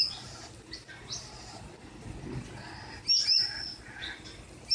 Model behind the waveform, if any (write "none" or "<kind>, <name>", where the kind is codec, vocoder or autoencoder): none